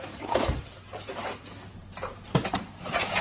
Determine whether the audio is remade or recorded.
remade